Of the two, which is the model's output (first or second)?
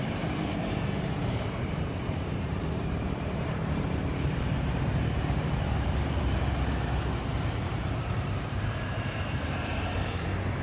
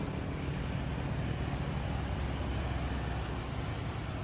first